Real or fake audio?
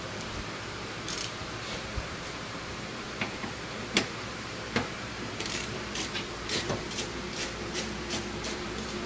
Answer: fake